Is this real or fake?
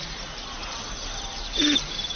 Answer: fake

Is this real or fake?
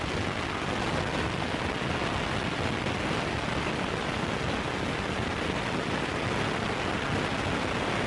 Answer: real